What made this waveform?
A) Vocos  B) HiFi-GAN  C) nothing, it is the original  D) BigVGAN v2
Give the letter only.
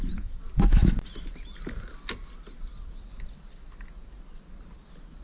C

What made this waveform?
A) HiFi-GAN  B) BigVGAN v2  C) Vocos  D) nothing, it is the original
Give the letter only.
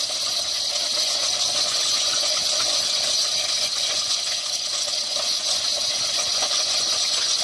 C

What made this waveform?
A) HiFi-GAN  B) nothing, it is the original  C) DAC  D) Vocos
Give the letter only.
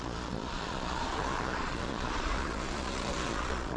D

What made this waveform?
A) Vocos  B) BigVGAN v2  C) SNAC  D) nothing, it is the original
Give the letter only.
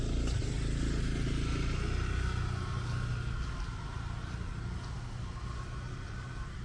D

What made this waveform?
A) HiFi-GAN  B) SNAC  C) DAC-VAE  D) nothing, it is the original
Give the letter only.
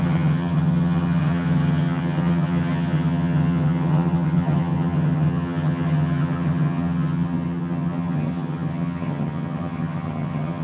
A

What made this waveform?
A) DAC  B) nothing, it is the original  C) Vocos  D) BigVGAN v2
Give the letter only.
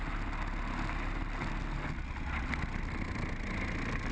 B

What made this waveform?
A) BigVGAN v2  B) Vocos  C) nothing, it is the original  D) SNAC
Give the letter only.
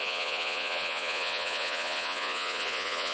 B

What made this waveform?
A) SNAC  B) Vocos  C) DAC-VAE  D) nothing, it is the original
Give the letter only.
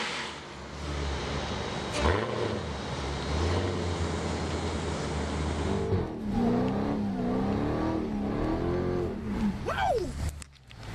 D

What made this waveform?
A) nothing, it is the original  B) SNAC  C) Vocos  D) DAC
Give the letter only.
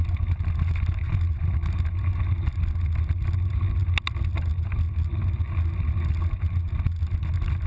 A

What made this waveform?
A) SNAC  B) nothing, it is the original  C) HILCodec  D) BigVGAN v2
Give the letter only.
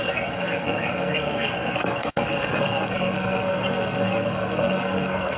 A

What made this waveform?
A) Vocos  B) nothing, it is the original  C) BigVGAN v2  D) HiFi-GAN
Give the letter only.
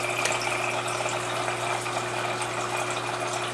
B